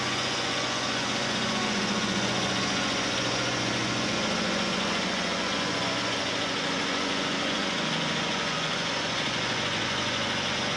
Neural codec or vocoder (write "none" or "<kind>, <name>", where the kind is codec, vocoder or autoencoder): vocoder, Vocos